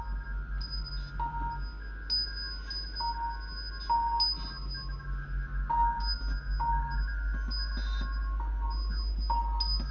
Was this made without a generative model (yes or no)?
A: yes